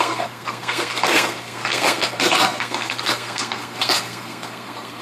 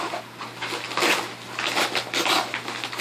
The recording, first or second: second